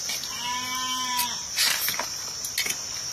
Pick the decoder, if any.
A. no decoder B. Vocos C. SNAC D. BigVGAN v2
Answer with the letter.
A